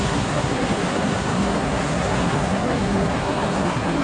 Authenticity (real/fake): fake